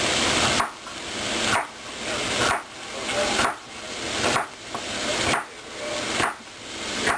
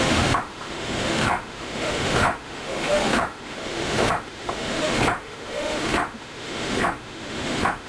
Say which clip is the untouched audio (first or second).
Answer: first